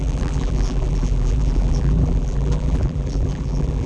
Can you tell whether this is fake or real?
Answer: fake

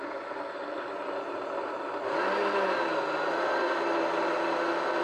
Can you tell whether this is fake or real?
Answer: real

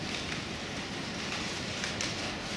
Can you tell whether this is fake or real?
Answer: real